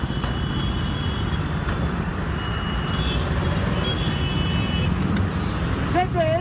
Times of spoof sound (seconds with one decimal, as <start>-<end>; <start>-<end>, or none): none